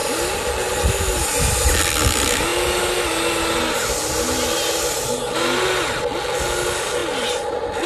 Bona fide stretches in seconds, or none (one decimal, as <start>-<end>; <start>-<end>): 0.0-7.9